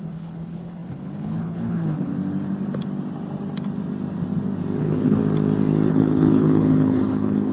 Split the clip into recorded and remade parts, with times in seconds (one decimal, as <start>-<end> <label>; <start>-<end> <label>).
0.0-2.1 remade; 2.1-4.8 recorded; 4.8-5.2 remade; 5.2-5.9 recorded; 5.9-7.5 remade